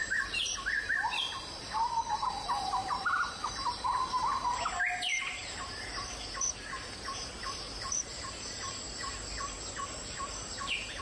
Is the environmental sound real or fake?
fake